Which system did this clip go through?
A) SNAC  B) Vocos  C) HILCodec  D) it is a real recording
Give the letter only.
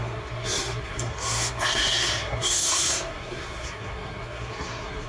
A